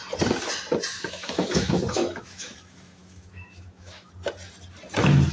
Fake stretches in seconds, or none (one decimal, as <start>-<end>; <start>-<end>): 0.9-4.1